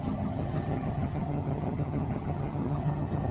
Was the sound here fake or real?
fake